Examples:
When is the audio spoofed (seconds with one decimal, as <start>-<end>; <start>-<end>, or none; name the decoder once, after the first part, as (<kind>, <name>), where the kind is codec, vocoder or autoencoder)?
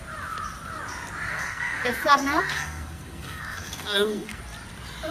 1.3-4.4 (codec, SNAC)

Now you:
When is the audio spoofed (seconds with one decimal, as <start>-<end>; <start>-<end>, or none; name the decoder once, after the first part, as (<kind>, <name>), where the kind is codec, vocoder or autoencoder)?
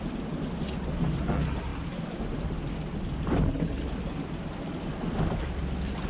none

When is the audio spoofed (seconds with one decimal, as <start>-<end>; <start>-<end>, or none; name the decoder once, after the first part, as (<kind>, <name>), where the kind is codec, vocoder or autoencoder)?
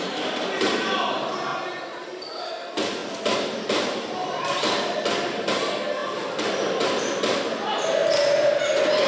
1.5-2.5 (vocoder, BigVGAN v2); 3.0-5.5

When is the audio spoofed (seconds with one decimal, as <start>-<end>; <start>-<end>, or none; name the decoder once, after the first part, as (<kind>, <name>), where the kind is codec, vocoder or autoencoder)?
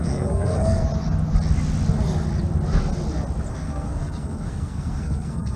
0.0-0.9 (codec, SNAC); 3.5-5.6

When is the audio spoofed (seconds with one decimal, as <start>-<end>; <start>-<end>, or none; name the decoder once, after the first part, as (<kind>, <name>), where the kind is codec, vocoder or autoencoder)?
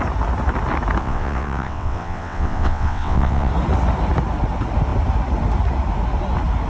1.0-3.5 (vocoder, WaveNeXt)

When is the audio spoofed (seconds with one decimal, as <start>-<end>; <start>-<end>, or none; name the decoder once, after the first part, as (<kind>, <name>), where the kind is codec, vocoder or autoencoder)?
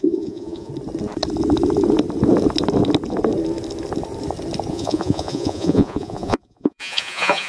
0.0-0.7 (vocoder, Vocos); 4.7-7.5